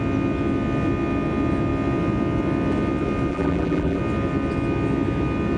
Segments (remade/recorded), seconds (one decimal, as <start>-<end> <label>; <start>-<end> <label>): 0.0-3.3 recorded; 3.3-4.0 remade; 4.0-5.6 recorded